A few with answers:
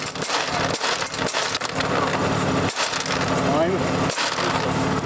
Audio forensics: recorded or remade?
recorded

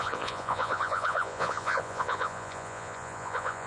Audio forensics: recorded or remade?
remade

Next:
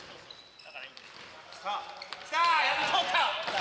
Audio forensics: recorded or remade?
recorded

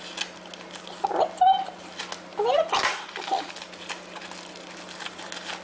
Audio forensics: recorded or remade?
recorded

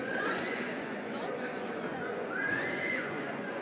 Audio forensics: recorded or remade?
remade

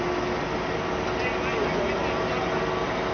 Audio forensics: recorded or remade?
recorded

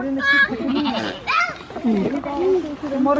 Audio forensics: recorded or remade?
recorded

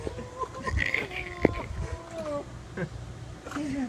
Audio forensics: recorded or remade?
recorded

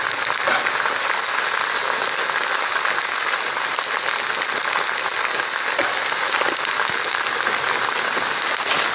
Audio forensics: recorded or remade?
recorded